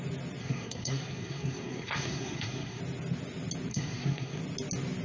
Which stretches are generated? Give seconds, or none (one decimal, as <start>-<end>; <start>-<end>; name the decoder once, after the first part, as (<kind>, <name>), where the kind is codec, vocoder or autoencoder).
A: 0.4-2.8 (codec, SNAC); 3.7-4.4

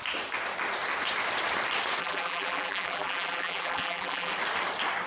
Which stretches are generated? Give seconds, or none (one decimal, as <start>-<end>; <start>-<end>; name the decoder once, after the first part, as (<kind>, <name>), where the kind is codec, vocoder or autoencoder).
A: 2.0-4.3 (vocoder, BigVGAN v2)